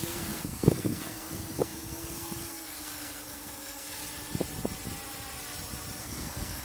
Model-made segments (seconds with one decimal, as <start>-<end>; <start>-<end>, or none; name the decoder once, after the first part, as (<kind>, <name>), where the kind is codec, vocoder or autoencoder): 0.0-4.0 (codec, SNAC); 6.0-6.6